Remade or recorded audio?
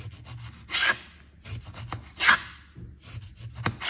recorded